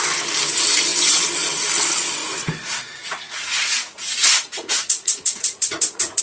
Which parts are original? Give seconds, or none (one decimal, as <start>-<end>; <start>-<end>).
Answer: 0.0-2.2